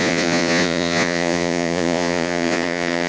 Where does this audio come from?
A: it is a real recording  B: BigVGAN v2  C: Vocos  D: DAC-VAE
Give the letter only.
C